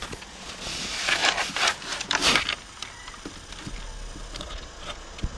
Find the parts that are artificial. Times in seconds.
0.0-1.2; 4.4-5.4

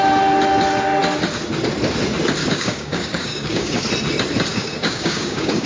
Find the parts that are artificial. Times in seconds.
2.4-3.8; 4.5-5.7

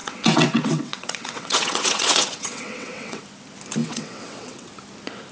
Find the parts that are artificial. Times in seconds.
0.0-3.2; 3.8-4.7

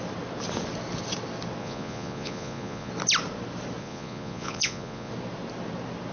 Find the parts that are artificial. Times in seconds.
1.6-2.9; 3.8-5.1

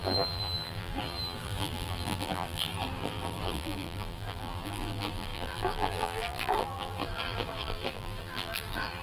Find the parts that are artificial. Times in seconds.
0.0-9.0

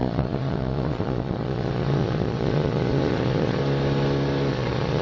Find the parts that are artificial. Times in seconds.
0.0-3.6; 4.5-5.0

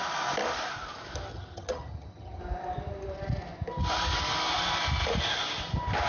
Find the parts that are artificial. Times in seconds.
1.3-2.4